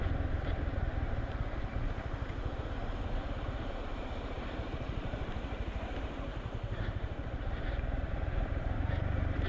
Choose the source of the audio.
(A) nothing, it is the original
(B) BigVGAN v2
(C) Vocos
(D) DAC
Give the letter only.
B